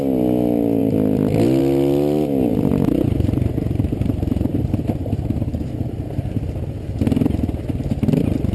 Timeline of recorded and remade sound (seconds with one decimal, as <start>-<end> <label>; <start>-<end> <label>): 0.0-0.8 recorded; 0.8-1.6 remade; 1.6-2.5 recorded; 2.5-4.7 remade; 4.7-8.5 recorded